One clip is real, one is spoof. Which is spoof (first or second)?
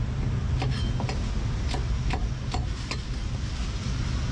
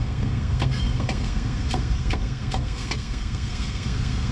second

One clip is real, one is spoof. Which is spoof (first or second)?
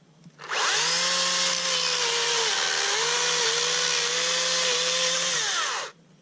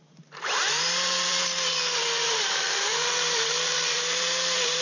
second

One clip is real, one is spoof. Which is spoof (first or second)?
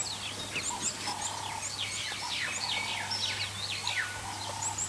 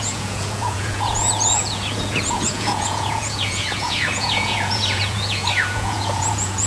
second